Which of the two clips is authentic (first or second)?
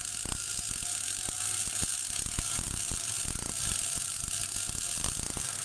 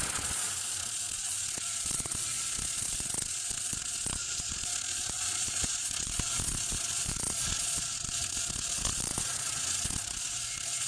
first